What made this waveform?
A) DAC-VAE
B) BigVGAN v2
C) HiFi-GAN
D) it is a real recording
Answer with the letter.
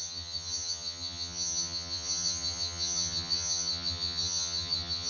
C